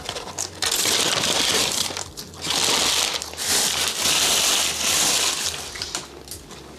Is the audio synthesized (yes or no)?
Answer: no